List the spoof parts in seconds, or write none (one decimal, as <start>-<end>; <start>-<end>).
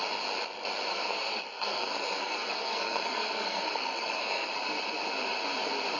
0.9-4.5